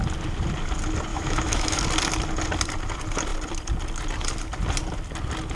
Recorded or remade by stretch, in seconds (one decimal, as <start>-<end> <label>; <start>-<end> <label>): 0.0-1.1 recorded; 1.1-1.8 remade; 1.8-5.6 recorded